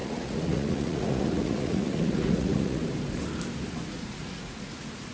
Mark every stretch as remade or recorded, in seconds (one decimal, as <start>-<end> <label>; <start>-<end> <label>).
0.0-2.8 remade; 2.8-3.9 recorded; 3.9-5.1 remade